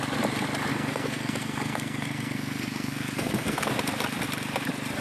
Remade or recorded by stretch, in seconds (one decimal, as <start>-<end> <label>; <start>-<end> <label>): 0.0-0.7 recorded; 0.7-3.7 remade; 3.7-5.0 recorded